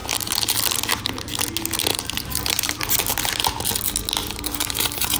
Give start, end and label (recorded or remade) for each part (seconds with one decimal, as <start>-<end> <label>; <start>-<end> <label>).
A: 0.0-1.9 recorded; 1.9-2.8 remade; 2.8-4.2 recorded; 4.2-5.2 remade